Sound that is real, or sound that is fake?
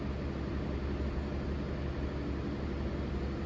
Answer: real